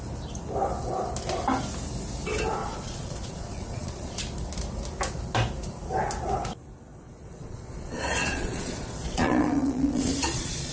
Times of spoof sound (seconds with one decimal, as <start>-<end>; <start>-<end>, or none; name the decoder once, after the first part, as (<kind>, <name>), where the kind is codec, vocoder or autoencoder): 2.6-4.2 (vocoder, Vocos); 6.9-10.7